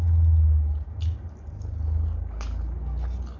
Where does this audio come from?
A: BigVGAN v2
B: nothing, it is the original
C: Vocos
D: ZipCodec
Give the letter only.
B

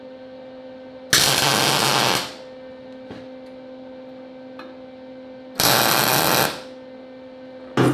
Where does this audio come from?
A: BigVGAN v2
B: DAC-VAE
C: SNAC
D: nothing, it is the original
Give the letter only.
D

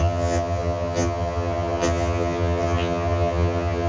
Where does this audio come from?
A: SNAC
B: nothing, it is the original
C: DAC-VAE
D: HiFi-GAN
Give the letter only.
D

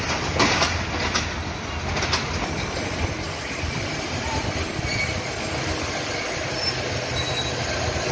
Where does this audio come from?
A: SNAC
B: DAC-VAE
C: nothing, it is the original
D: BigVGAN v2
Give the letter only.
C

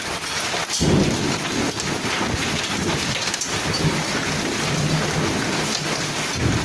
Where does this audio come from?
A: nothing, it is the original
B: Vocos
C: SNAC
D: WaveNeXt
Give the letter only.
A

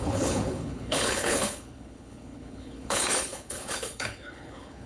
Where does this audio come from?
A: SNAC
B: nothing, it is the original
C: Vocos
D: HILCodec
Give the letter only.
D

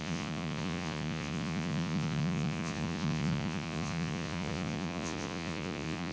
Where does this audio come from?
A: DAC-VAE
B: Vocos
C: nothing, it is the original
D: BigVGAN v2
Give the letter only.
B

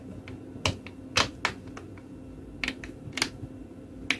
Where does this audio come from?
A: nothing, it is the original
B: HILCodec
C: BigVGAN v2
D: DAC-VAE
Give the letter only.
A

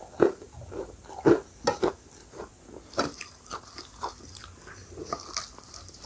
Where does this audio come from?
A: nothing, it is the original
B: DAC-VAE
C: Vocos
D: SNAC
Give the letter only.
A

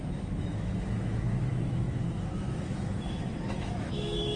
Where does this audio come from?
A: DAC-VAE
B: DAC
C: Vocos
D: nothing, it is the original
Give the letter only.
A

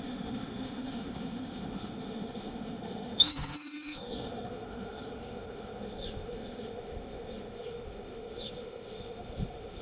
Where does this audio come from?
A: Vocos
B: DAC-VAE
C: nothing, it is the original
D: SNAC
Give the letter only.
B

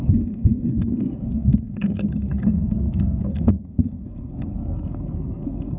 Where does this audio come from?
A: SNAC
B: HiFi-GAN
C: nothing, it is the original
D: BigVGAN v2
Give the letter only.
A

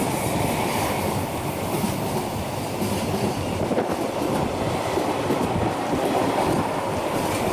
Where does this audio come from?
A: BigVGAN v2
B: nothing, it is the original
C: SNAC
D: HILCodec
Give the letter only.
A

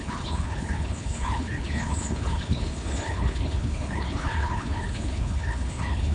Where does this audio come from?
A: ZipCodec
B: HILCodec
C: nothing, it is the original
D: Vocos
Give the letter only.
B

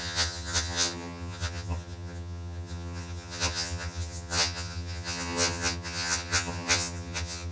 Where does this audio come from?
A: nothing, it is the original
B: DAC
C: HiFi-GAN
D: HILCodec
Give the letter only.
C